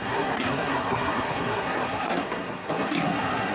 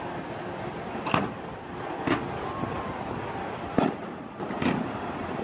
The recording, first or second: second